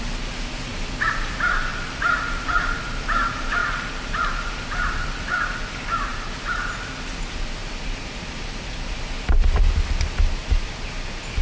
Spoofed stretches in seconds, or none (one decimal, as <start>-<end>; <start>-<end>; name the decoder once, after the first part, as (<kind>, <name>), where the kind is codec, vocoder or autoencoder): 1.7-2.8 (vocoder, BigVGAN v2); 3.6-4.5; 7.6-8.2